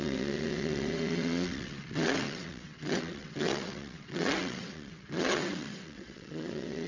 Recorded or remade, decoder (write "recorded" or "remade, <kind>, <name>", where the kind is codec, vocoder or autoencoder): remade, vocoder, WaveNeXt